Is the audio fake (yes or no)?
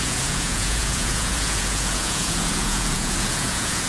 yes